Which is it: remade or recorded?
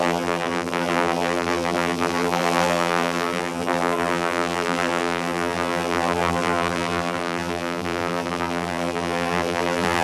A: remade